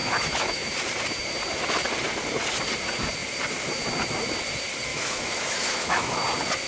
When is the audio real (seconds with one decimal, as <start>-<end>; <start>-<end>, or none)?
0.7-4.9; 6.2-6.7